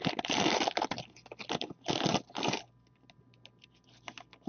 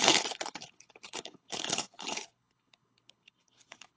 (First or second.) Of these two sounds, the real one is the first